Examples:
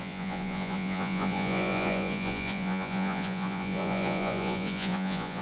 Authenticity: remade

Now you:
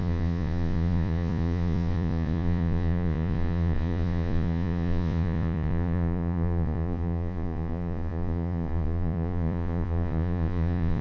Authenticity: remade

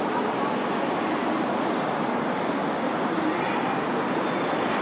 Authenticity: recorded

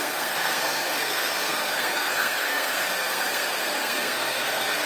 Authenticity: remade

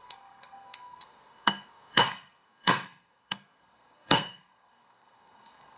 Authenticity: remade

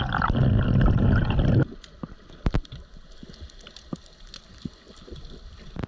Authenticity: recorded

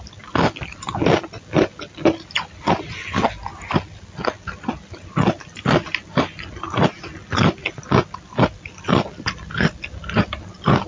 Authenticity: recorded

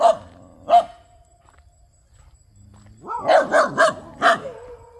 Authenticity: recorded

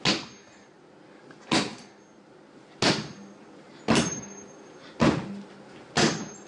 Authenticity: recorded